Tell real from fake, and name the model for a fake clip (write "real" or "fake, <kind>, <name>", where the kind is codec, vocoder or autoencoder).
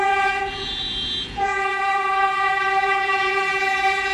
fake, vocoder, Vocos